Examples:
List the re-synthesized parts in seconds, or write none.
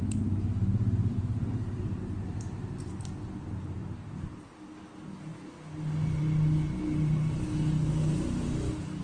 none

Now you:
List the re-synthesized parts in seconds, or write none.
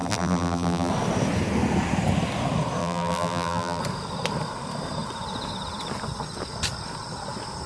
0.0-0.9 (vocoder, BigVGAN v2); 2.8-3.8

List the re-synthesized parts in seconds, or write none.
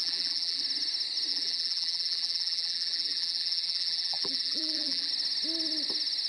0.0-0.6 (vocoder, BigVGAN v2); 1.3-5.1